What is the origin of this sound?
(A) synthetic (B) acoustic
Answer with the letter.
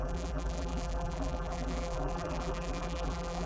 A